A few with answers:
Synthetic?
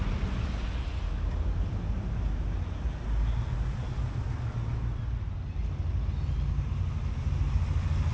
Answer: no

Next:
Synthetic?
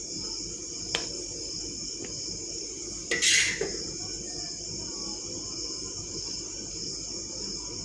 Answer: no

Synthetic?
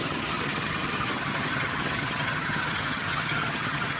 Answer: yes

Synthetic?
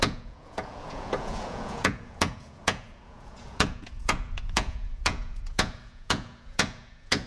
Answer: yes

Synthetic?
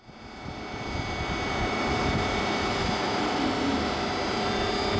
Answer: no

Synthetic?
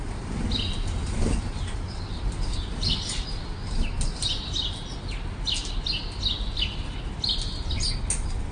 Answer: no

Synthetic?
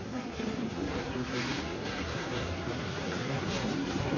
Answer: yes